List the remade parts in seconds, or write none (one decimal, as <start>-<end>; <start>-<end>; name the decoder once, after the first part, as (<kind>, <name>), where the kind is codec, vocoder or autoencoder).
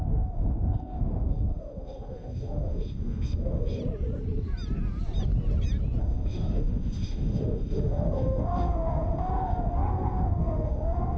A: 0.0-3.8 (autoencoder, DAC-VAE); 6.0-11.2